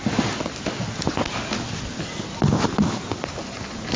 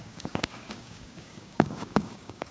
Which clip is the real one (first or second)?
first